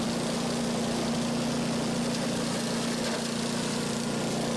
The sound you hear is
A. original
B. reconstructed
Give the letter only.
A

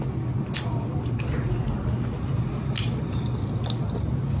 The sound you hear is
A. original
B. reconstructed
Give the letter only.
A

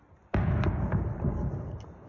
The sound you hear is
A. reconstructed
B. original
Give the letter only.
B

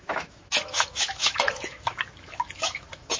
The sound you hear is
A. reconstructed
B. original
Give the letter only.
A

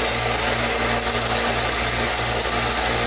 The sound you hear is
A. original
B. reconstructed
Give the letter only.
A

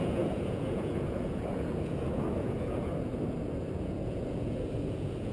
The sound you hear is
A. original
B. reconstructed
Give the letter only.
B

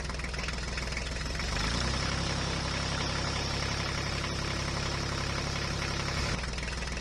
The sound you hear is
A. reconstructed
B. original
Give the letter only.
B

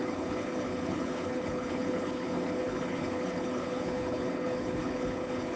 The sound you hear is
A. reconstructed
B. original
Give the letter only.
A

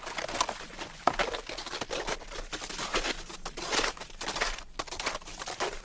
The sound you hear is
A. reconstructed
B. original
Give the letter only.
B